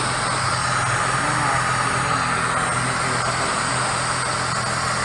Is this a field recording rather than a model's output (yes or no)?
yes